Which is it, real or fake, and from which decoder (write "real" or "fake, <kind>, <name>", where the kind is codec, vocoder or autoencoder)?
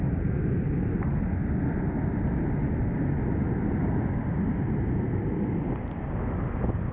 real